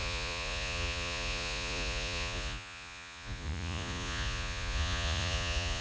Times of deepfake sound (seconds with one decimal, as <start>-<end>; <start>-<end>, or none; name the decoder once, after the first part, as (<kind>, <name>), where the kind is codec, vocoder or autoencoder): 0.0-5.8 (vocoder, Vocos)